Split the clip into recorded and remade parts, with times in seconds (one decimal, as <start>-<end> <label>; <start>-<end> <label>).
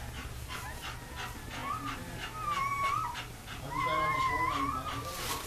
0.0-5.5 recorded